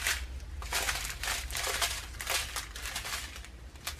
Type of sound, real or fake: real